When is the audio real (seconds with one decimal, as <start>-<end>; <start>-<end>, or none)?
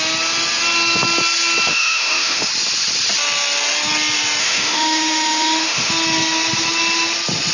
0.0-1.7; 2.5-4.4; 5.9-7.5